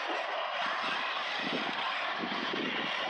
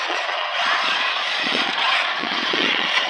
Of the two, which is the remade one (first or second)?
second